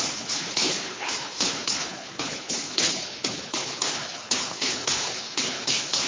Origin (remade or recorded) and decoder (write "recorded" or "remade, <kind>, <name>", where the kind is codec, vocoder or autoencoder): remade, codec, HILCodec